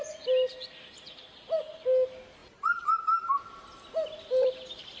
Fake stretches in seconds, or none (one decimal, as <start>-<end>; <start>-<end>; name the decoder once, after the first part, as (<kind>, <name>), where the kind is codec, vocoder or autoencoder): none